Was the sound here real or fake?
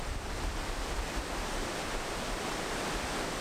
fake